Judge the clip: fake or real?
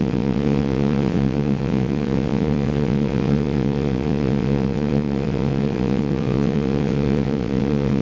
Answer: fake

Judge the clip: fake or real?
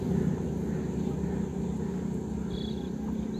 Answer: real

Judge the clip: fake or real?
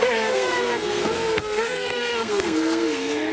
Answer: fake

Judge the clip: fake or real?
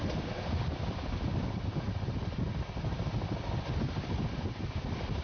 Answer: real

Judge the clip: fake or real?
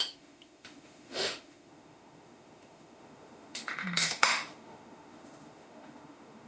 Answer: fake